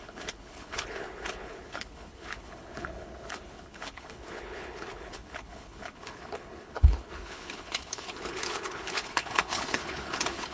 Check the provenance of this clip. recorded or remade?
remade